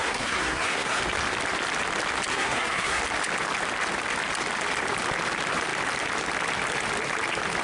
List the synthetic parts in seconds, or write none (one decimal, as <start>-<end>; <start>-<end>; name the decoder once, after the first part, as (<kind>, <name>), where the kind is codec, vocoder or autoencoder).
0.0-1.0 (codec, SNAC); 2.3-3.0